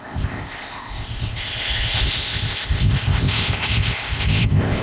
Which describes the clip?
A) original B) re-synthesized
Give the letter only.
B